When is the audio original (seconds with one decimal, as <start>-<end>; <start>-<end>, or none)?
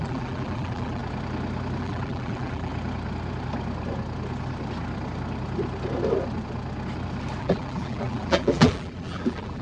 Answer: 1.0-1.8; 2.7-7.4